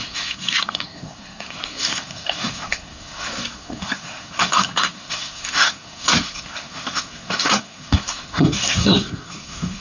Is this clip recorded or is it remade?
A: remade